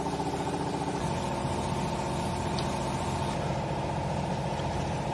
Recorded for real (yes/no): yes